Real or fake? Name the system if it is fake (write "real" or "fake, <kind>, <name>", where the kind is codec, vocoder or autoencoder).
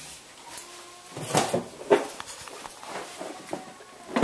real